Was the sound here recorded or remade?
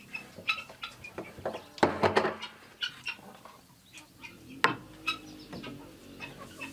recorded